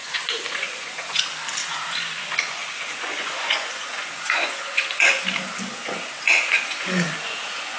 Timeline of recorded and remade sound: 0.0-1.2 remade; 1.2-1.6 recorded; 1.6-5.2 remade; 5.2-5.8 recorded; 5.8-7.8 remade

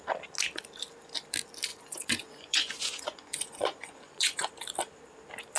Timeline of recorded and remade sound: 0.0-1.7 recorded; 1.7-4.5 remade; 4.5-5.6 recorded

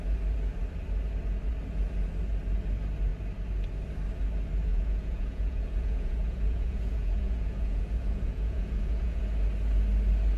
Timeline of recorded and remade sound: 0.0-4.7 recorded; 4.7-9.2 remade; 9.2-10.4 recorded

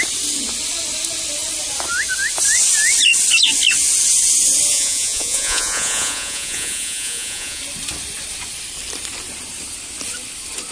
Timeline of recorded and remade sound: 0.0-4.7 recorded; 4.7-7.6 remade; 7.6-10.7 recorded

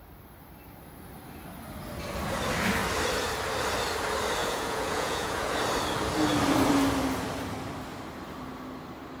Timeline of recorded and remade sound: 0.0-4.4 recorded; 4.4-5.5 remade; 5.5-9.2 recorded

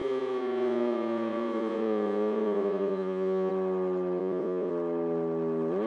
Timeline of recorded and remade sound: 0.0-3.5 remade; 3.5-4.2 recorded; 4.2-4.7 remade; 4.7-5.9 recorded

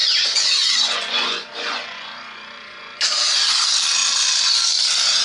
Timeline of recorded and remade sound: 0.0-3.1 remade; 3.1-5.2 recorded

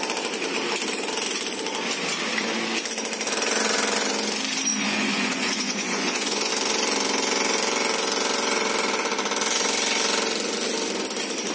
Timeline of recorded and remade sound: 0.0-4.7 recorded; 4.7-6.5 remade; 6.5-11.5 recorded